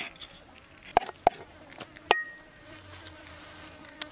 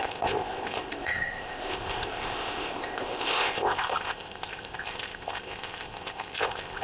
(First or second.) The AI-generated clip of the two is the second